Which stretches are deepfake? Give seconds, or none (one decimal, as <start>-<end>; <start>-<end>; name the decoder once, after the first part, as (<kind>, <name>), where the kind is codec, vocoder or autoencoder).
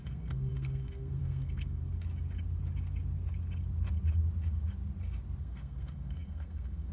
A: 0.0-1.8 (codec, SNAC); 5.4-6.9